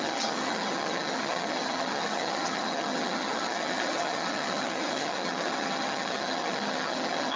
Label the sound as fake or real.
fake